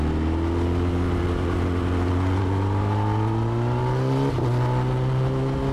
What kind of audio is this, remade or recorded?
recorded